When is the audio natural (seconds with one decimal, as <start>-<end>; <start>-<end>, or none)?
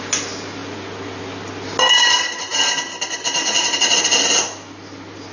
0.0-5.3